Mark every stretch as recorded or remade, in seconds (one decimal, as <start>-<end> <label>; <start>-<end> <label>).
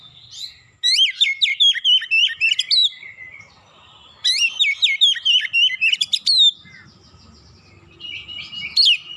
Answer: 0.0-9.2 recorded